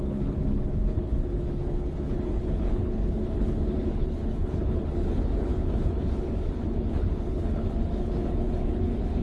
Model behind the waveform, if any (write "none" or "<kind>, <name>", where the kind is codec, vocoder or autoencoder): codec, HILCodec